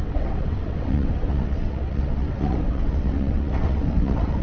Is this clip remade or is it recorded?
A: remade